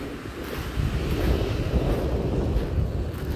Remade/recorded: remade